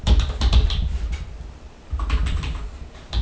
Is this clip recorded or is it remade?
recorded